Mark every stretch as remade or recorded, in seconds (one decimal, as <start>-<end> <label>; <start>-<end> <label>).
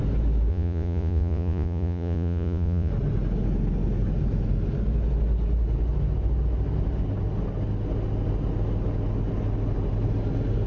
0.0-0.5 recorded; 0.5-2.9 remade; 2.9-10.7 recorded